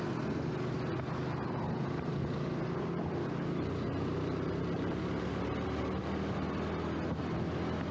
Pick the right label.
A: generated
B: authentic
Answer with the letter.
B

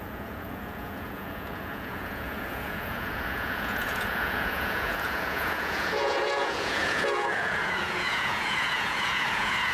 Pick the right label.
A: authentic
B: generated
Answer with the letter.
B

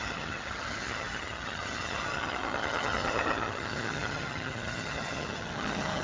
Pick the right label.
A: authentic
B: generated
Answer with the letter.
B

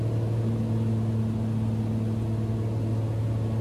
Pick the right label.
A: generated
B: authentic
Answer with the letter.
B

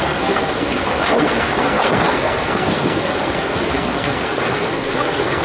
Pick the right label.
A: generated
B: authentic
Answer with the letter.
A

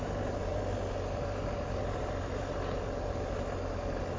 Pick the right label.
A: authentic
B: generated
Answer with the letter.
A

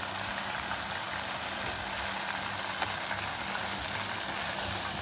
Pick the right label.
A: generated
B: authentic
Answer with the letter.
B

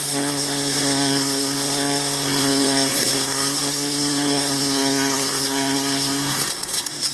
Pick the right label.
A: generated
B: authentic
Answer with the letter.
A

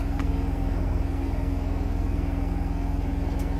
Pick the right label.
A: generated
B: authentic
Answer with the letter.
A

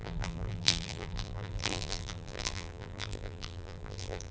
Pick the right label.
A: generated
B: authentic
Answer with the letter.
A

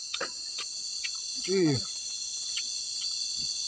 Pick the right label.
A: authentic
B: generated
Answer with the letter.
B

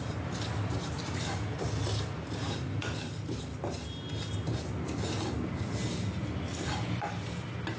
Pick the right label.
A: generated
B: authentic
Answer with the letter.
B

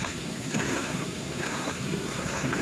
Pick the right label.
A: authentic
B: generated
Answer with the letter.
B